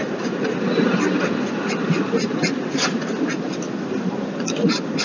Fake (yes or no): no